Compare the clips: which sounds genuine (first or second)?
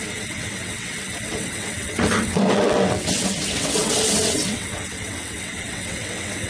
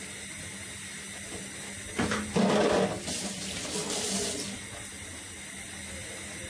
second